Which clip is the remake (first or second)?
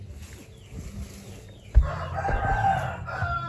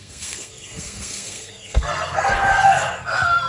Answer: second